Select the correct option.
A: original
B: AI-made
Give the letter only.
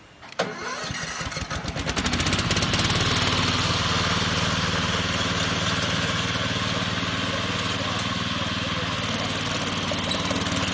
A